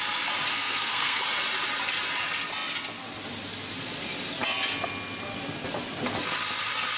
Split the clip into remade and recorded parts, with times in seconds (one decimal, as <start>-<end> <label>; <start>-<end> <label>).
0.0-0.5 recorded; 0.5-1.2 remade; 1.2-7.0 recorded